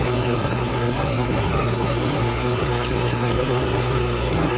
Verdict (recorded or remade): remade